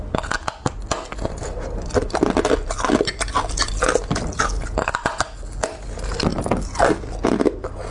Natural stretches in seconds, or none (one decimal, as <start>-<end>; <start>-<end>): 0.0-7.9